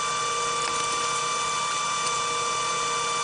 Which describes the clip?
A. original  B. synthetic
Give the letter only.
A